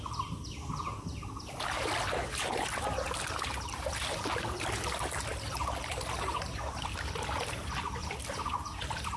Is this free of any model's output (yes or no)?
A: yes